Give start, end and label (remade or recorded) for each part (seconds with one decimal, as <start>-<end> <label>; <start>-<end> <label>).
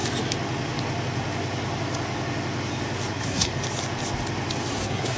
0.0-3.1 recorded; 3.1-3.5 remade; 3.5-4.7 recorded; 4.7-5.2 remade